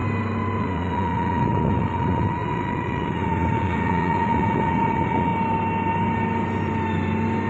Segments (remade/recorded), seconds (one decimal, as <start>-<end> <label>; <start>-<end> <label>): 0.0-0.6 recorded; 0.6-5.3 remade; 5.3-7.5 recorded